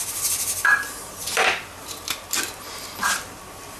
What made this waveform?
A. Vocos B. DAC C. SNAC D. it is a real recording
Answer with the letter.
D